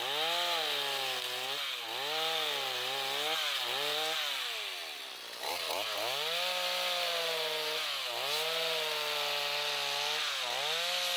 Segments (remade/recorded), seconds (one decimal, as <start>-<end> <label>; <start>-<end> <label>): 0.0-11.2 recorded